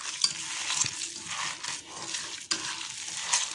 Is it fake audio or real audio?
real